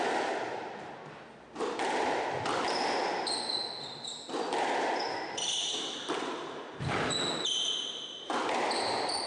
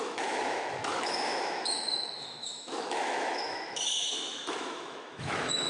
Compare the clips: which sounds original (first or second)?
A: first